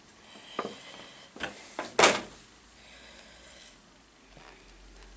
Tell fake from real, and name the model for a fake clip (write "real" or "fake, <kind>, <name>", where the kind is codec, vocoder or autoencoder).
real